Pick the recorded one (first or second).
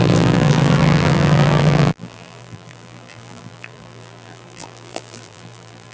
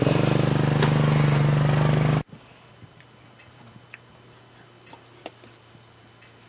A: second